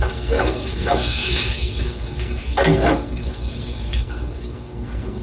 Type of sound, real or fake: fake